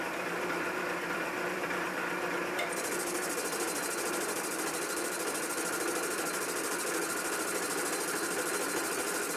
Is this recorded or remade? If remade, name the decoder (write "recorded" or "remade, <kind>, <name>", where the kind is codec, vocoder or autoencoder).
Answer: remade, vocoder, BigVGAN v2